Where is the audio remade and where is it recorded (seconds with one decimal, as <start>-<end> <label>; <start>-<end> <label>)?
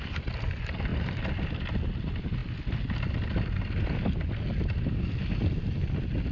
0.0-6.3 recorded